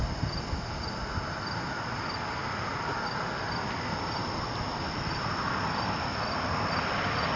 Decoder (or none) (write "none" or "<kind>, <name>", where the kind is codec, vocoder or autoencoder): none